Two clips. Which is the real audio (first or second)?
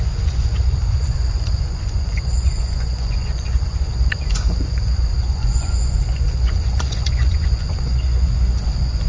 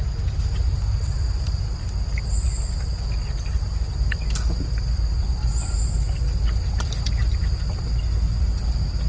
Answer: second